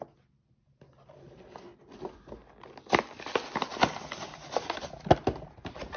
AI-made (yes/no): no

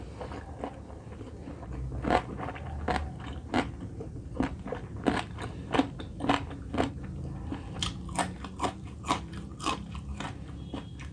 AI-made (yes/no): no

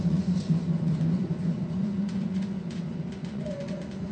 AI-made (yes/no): yes